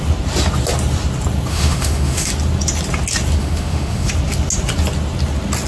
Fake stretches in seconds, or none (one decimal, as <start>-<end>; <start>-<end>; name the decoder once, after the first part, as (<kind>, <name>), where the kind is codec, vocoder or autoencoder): 1.5-2.3 (autoencoder, DAC-VAE); 3.4-4.1